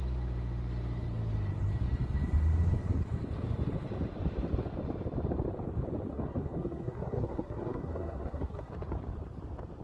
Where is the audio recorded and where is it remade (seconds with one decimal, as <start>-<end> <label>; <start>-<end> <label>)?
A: 0.0-6.1 recorded; 6.1-8.7 remade; 8.7-9.8 recorded